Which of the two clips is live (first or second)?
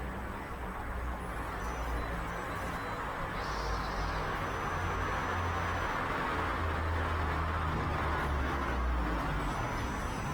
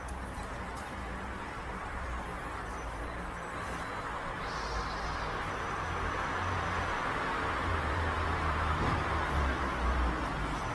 first